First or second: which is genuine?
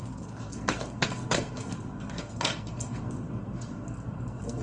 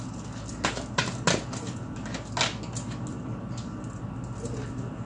second